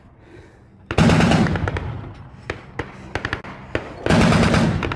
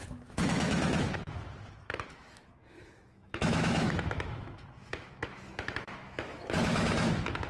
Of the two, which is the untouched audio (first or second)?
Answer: first